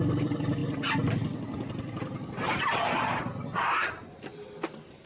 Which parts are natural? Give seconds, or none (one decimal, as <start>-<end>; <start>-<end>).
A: 0.0-5.1